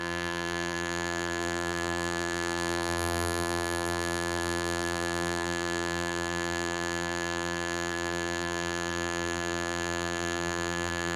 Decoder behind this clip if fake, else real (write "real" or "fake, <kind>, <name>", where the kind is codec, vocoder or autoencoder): fake, vocoder, BigVGAN v2